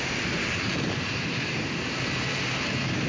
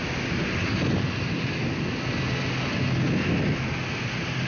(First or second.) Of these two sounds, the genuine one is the second